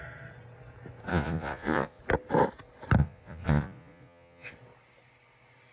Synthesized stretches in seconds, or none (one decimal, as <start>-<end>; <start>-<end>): 1.1-2.0; 3.0-4.5